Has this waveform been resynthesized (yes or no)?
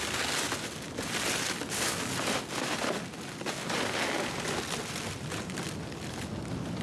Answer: no